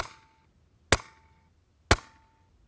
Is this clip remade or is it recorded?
recorded